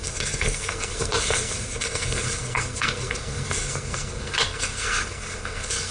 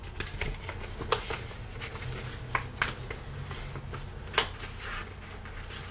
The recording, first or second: second